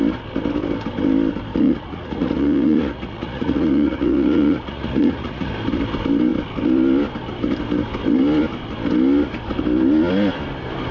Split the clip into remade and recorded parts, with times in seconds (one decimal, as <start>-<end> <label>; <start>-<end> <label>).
0.0-1.5 recorded; 1.5-5.5 remade; 5.5-10.9 recorded